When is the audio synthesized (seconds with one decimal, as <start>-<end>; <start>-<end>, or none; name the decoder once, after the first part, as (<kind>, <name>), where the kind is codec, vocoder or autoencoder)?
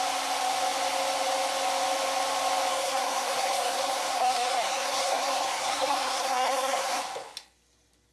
2.7-7.0 (codec, SNAC)